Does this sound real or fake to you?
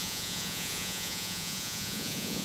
fake